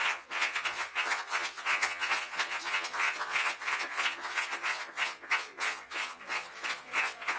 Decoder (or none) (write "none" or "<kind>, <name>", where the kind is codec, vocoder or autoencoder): vocoder, Vocos